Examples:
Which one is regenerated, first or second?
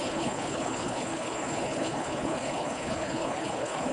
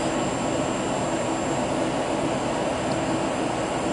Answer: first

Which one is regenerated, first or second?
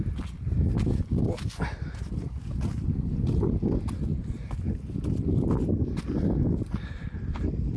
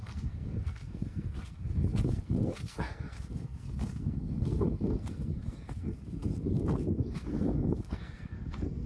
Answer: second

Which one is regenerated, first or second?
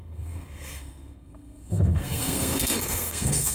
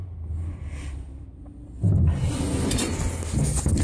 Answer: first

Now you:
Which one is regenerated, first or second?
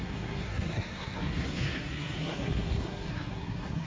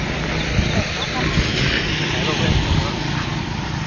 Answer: first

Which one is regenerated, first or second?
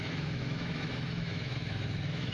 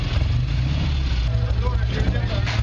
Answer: first